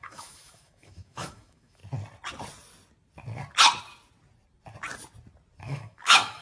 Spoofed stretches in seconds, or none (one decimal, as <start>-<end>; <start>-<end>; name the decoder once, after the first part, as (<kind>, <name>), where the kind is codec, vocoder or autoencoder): 0.0-1.8 (autoencoder, DAC-VAE); 5.6-6.4